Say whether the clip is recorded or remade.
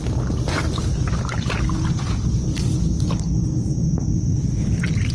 recorded